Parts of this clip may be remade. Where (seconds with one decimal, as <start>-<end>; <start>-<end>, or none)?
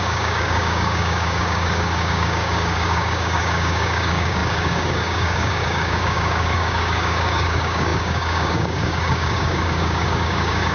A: 0.0-10.7